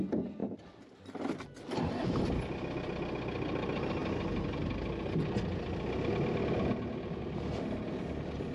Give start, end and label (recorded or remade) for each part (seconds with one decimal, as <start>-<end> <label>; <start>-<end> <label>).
0.0-8.5 recorded